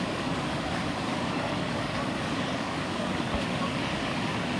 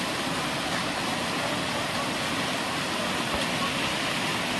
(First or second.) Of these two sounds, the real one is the second